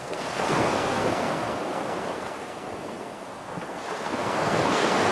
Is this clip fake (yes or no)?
yes